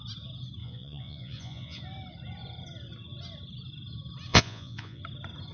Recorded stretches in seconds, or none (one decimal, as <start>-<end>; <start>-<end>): 0.0-0.6; 1.8-4.3; 5.0-5.5